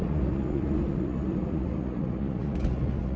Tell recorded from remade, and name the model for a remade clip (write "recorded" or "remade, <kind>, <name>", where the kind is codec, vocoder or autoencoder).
remade, vocoder, Vocos